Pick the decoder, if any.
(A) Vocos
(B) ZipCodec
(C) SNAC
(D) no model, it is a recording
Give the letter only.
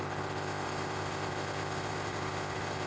B